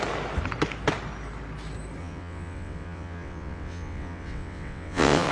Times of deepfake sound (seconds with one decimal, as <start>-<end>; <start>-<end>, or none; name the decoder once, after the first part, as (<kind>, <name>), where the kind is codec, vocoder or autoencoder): 2.0-5.3 (vocoder, WaveNeXt)